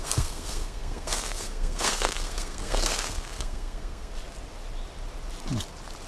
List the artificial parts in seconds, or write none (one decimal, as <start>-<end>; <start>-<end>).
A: 0.0-4.1